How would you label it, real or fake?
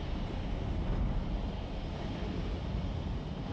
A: real